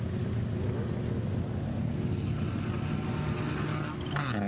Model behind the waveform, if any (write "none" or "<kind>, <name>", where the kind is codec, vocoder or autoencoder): none